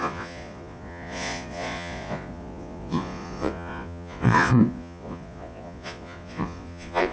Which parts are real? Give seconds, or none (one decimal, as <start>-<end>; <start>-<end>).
none

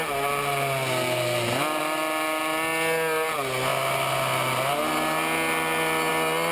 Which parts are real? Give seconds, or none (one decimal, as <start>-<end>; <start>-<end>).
0.0-6.5

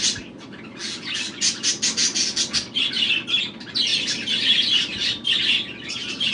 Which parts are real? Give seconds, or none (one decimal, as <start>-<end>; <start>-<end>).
0.0-6.3

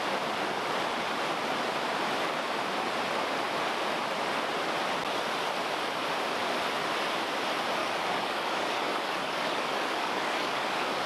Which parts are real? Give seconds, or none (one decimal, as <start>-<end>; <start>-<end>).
0.0-7.8